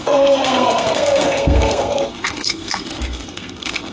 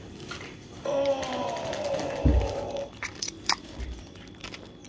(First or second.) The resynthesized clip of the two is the first